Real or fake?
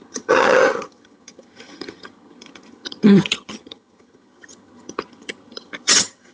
fake